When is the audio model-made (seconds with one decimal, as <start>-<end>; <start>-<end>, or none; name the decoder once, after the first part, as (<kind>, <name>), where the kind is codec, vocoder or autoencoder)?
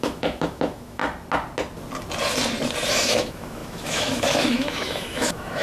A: 0.0-1.0 (autoencoder, DAC-VAE); 2.9-5.6